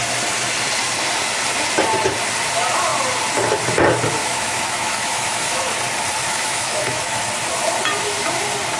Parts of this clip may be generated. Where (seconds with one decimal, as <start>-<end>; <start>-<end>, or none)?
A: 4.2-5.7; 6.2-7.3